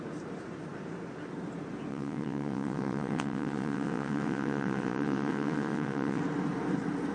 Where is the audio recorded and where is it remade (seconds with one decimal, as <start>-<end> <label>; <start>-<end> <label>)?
0.0-1.9 recorded; 1.9-6.2 remade; 6.2-7.1 recorded